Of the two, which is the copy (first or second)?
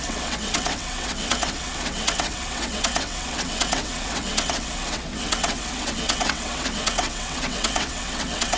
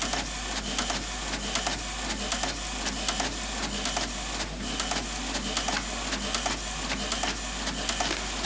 first